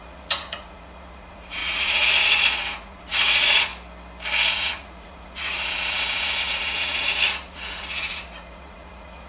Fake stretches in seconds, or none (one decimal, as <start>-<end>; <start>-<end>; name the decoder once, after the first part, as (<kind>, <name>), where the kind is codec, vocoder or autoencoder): 0.0-3.7 (vocoder, Vocos); 4.5-9.3